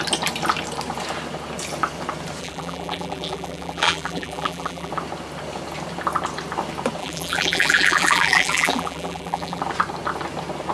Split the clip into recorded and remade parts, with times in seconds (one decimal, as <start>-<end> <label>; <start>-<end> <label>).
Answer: 0.0-2.4 recorded; 2.4-4.9 remade; 4.9-7.0 recorded; 7.0-9.6 remade; 9.6-10.7 recorded